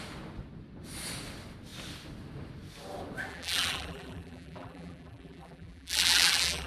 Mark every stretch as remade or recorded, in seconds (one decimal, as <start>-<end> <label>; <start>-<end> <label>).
0.0-3.3 recorded; 3.3-6.7 remade

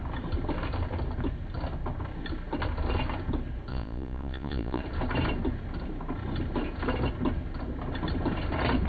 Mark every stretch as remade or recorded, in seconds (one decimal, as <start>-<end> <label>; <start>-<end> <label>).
0.0-3.7 recorded; 3.7-4.8 remade; 4.8-8.9 recorded

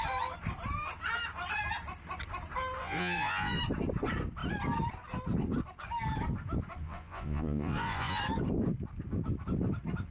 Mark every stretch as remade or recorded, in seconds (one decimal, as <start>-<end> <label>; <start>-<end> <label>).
0.0-2.8 recorded; 2.8-3.6 remade; 3.6-6.8 recorded; 6.8-8.2 remade; 8.2-10.1 recorded